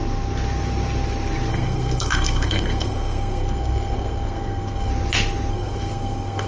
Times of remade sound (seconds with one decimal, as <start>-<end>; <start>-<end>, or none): 1.5-4.9; 5.5-6.5